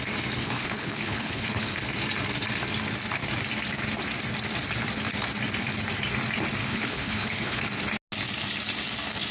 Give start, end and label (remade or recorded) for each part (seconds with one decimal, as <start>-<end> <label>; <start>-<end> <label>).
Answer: 0.0-0.4 recorded; 0.4-1.8 remade; 1.8-6.6 recorded; 6.6-7.6 remade; 7.6-9.3 recorded